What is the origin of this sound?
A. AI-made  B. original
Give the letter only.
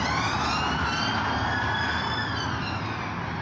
B